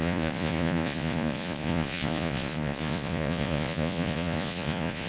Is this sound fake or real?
fake